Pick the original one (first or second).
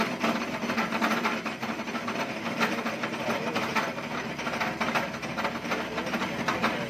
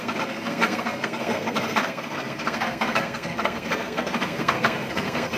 first